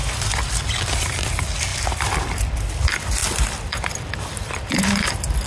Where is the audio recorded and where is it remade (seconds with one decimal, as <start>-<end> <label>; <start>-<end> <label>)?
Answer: 0.0-0.6 remade; 0.6-1.7 recorded; 1.7-2.8 remade; 2.8-3.2 recorded; 3.2-5.0 remade; 5.0-5.5 recorded